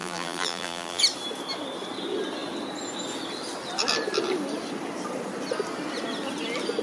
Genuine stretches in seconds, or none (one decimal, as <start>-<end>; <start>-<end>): 1.0-6.8